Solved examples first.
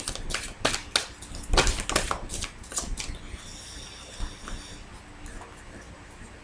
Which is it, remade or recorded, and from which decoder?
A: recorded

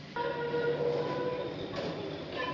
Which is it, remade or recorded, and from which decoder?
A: recorded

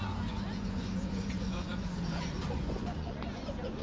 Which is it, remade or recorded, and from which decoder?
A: remade, vocoder, Vocos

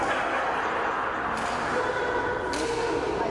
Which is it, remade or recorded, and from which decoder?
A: recorded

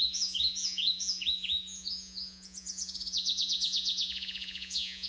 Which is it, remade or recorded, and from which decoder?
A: remade, vocoder, Vocos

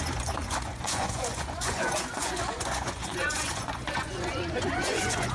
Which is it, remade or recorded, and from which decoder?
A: remade, vocoder, Vocos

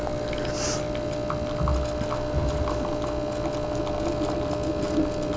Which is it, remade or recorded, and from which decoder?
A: recorded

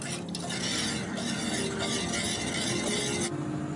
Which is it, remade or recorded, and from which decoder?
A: recorded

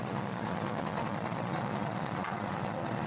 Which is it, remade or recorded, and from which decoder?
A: remade, vocoder, Vocos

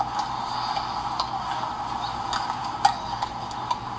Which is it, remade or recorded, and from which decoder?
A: recorded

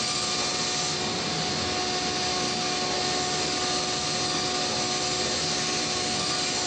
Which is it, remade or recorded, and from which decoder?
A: recorded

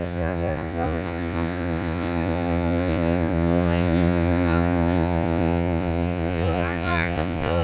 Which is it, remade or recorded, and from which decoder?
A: remade, vocoder, Vocos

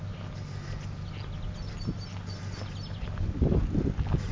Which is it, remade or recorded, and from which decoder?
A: recorded